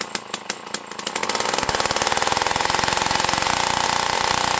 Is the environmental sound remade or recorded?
recorded